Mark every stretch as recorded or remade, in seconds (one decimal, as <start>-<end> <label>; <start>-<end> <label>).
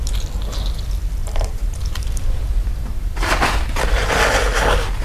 0.0-1.2 recorded; 1.2-3.9 remade; 3.9-5.0 recorded